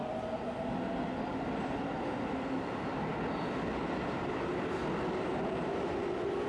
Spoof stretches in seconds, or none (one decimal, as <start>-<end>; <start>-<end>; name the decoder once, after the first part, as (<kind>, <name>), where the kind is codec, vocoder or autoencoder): 3.9-4.8 (vocoder, BigVGAN v2); 6.0-6.5

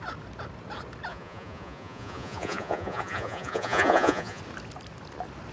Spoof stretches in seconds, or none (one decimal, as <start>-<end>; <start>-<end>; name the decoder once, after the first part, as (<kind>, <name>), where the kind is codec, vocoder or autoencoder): 1.1-4.4 (vocoder, Vocos)

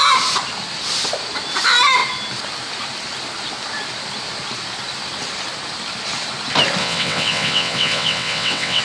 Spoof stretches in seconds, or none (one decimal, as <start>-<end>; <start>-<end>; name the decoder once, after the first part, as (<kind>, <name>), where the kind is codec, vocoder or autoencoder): 6.8-8.8 (vocoder, WaveNeXt)